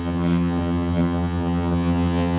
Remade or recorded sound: remade